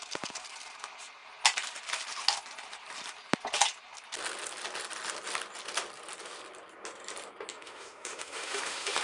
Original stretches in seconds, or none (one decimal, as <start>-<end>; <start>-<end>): 0.0-7.5